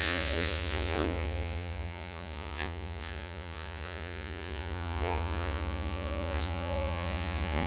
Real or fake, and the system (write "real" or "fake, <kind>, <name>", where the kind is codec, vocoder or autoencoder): fake, vocoder, Vocos